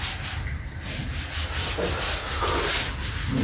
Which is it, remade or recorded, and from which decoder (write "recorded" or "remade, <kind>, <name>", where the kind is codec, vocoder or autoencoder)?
recorded